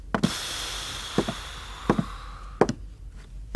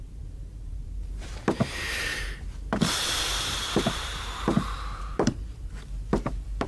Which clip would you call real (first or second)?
first